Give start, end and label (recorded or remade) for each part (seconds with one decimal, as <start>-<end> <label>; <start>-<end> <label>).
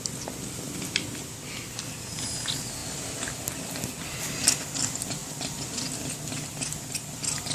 0.0-7.5 recorded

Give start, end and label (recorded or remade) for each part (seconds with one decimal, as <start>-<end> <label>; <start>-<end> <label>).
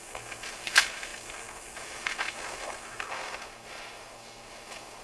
0.0-5.0 remade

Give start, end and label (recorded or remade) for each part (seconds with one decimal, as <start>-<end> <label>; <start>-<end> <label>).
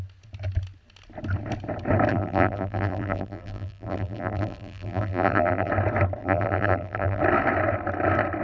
0.0-2.1 recorded; 2.1-5.7 remade; 5.7-6.2 recorded; 6.2-7.2 remade; 7.2-8.4 recorded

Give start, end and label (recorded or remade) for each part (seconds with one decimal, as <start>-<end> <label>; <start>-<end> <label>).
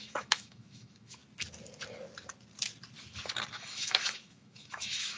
0.0-1.2 remade; 1.2-3.5 recorded; 3.5-5.2 remade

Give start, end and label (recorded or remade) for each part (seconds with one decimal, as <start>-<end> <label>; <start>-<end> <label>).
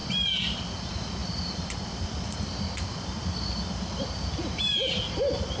0.0-5.6 recorded